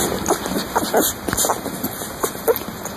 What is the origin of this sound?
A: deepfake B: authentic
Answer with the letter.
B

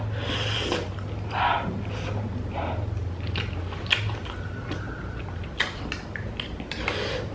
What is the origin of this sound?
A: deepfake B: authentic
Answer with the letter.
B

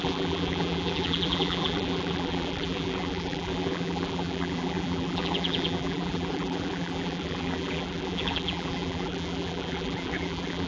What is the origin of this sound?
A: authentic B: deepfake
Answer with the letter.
B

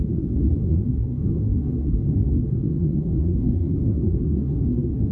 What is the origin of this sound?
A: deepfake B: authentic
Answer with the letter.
A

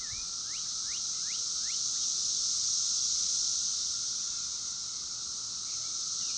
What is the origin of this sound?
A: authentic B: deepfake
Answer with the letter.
A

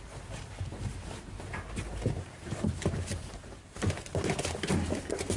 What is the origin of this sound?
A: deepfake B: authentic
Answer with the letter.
A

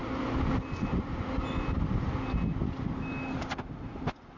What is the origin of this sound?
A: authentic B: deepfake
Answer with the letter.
A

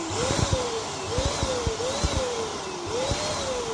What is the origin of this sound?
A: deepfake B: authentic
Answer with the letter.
B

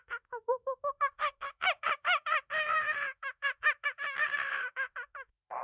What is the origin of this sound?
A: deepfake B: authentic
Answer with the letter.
A